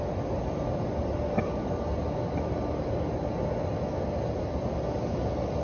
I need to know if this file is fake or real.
real